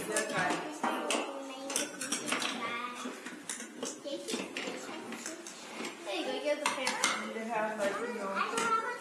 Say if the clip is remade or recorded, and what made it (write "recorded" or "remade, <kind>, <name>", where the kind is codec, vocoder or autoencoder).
recorded